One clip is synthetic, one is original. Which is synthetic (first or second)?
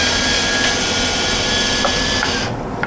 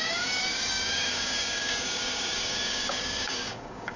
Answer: second